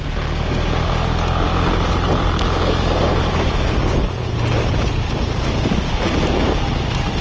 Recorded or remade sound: recorded